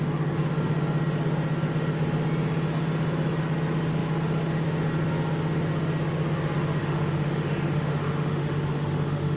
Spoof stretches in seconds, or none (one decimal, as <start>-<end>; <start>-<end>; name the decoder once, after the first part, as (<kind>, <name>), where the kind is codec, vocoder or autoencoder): 6.8-9.4 (autoencoder, DAC-VAE)